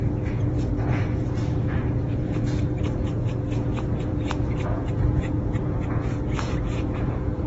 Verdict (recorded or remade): remade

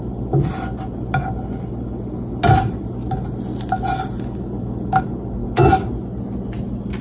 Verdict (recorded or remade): recorded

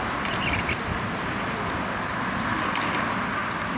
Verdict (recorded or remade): recorded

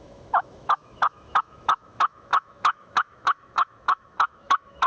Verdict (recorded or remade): remade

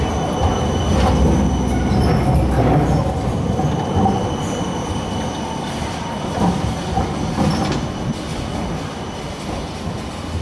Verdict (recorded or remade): recorded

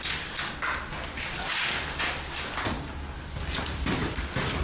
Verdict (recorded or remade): recorded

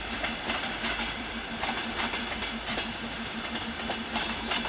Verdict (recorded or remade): remade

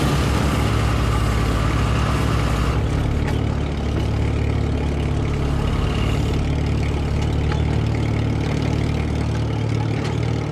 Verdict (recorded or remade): recorded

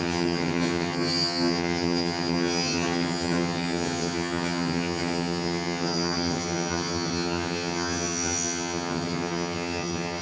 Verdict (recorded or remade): remade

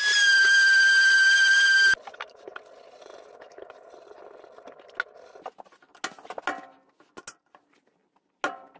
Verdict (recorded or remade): recorded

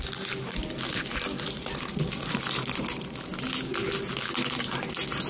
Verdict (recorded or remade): recorded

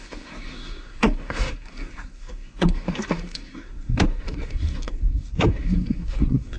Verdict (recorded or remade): remade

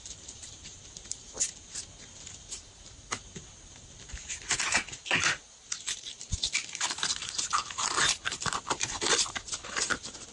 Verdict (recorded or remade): remade